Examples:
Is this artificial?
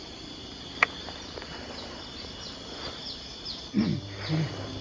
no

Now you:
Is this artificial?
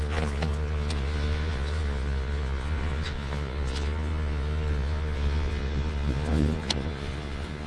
yes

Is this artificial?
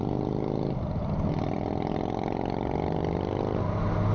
no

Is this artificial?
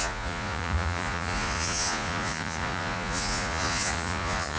yes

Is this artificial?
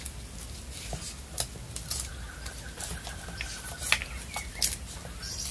no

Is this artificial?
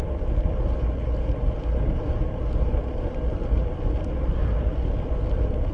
no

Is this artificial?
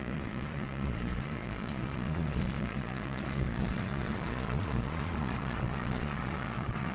yes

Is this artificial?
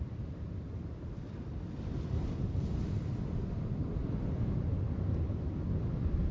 no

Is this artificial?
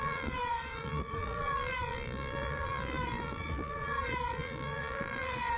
yes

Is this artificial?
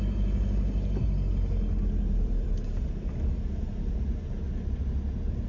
no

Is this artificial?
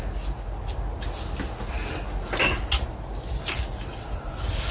no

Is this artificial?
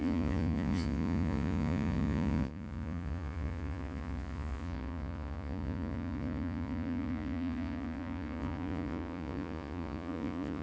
yes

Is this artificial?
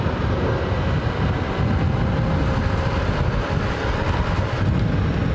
no